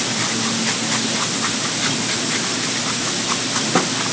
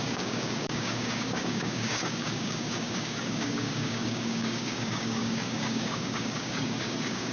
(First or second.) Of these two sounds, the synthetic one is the second